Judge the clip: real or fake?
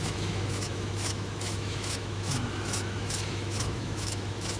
fake